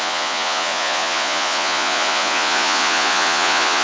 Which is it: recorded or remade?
remade